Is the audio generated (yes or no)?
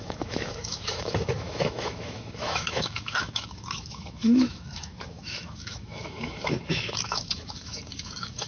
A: yes